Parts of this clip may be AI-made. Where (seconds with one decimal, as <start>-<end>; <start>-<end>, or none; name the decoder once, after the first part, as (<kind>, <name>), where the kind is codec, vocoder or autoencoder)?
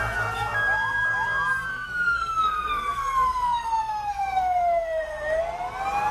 1.7-5.4 (codec, SNAC)